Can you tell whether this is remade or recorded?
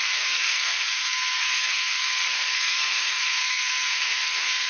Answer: remade